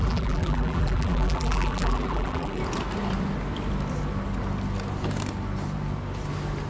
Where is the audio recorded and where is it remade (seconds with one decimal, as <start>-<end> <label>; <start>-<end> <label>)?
0.0-2.6 remade; 2.6-6.7 recorded